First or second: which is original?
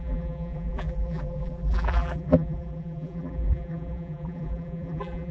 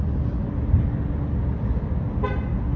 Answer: second